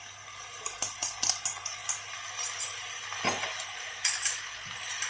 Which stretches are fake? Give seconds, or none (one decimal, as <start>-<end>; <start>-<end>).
none

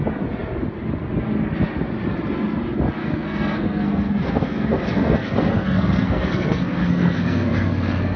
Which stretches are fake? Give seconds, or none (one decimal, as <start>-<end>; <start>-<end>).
3.0-8.2